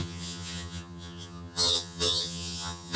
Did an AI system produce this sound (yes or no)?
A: yes